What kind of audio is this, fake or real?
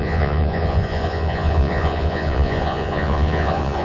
fake